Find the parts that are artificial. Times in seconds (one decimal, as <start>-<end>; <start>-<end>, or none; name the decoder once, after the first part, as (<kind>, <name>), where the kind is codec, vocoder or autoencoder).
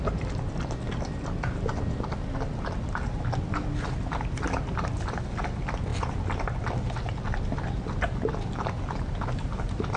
none